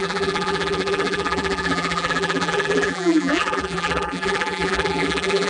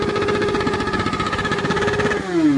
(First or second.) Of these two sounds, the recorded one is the second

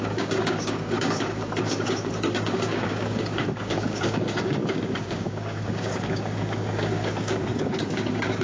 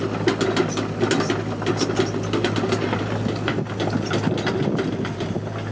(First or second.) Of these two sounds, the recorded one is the second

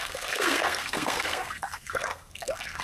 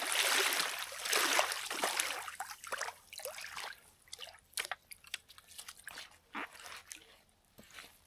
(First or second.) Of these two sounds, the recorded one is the second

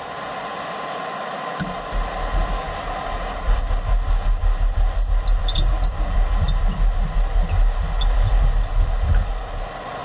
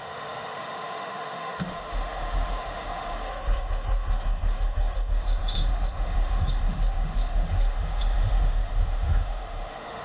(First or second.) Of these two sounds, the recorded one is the first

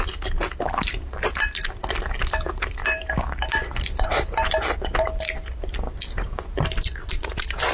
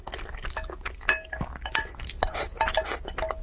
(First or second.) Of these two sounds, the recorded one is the second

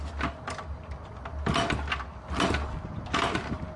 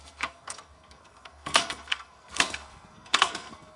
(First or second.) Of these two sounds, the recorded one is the first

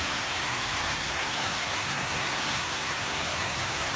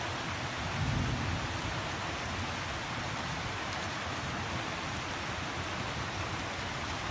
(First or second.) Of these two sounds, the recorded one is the second